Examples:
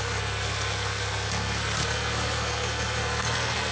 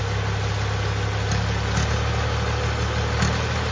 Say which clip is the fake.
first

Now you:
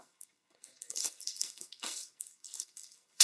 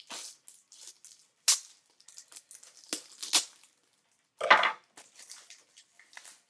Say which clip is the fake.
first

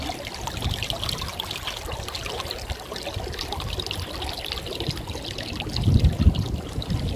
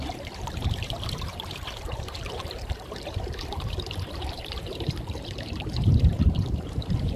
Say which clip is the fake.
second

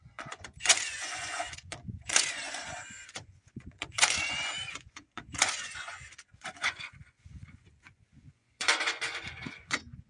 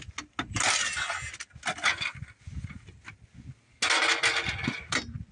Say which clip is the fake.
first